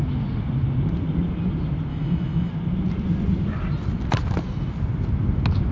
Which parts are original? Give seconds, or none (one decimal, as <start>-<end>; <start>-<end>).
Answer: 0.0-1.9; 2.5-5.7